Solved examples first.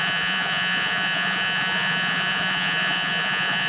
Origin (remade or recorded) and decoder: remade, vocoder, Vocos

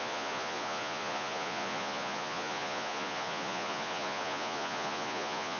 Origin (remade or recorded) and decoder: remade, vocoder, Vocos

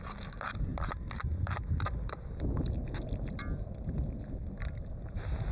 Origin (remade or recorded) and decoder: recorded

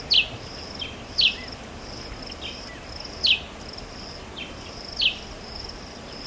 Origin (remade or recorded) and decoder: recorded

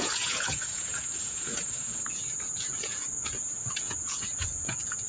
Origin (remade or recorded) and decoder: remade, vocoder, Vocos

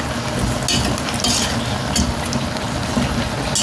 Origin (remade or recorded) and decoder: recorded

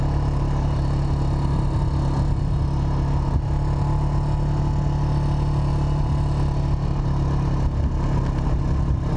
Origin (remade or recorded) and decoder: recorded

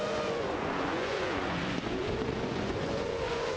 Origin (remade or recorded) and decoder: remade, vocoder, Vocos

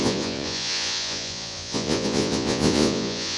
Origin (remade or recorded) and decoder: remade, vocoder, Vocos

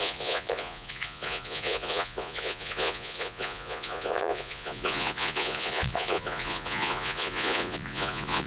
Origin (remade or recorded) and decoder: remade, vocoder, Vocos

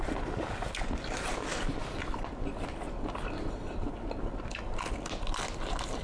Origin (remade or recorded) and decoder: recorded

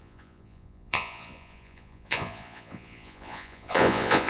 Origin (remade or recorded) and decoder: remade, vocoder, Vocos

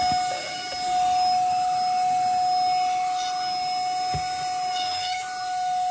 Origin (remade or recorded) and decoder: recorded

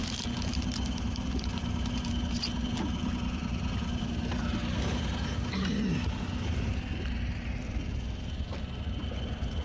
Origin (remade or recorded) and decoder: recorded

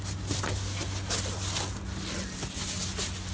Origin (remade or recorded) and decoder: recorded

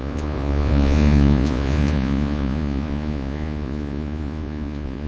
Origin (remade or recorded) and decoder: remade, vocoder, Vocos